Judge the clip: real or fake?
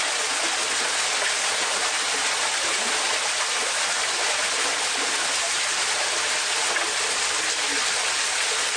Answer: real